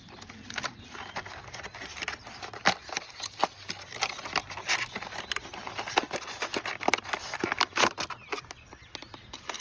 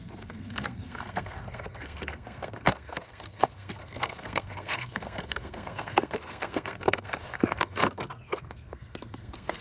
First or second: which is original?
first